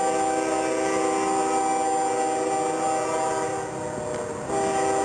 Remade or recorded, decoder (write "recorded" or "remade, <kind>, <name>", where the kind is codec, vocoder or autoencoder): recorded